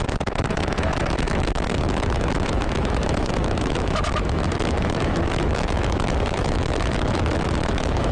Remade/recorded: remade